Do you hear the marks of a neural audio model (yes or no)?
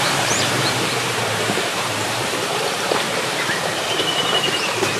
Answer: yes